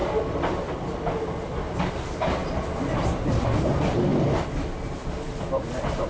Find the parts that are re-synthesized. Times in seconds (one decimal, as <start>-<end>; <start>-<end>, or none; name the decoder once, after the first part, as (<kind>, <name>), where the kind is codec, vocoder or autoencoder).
none